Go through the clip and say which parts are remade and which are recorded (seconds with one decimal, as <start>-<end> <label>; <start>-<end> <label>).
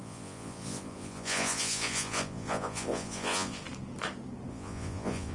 0.0-3.6 remade; 3.6-4.5 recorded; 4.5-5.3 remade